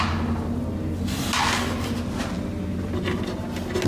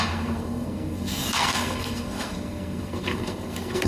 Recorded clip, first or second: first